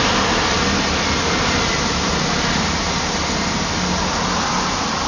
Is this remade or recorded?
recorded